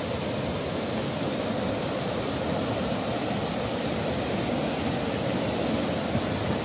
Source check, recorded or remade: recorded